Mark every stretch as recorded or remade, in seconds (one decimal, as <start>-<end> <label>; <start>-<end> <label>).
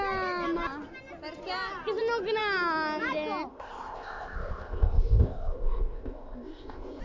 0.0-3.5 recorded; 3.5-7.0 remade